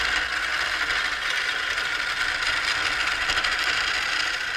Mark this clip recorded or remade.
recorded